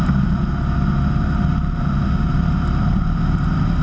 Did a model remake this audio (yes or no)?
no